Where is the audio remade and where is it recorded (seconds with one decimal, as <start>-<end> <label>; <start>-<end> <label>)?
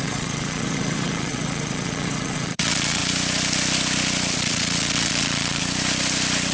0.0-3.0 remade; 3.0-4.4 recorded; 4.4-5.6 remade; 5.6-6.5 recorded